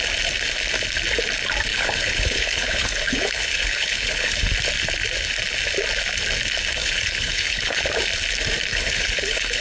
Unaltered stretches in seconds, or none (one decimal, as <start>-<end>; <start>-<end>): 0.0-1.7; 4.4-6.8; 7.8-8.7